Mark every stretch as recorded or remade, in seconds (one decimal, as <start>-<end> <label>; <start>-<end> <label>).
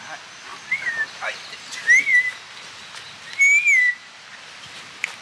0.0-5.2 recorded